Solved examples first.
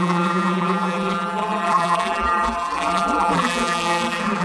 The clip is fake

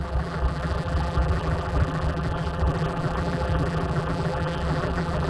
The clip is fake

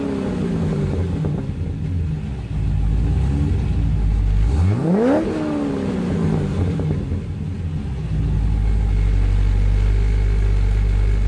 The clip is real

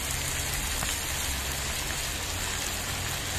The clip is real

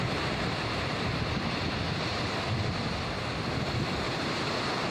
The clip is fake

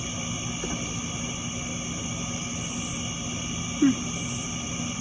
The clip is real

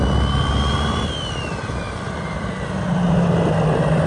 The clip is fake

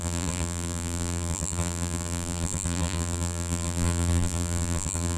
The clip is fake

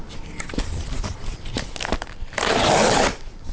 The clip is fake